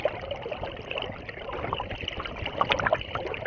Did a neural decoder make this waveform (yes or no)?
yes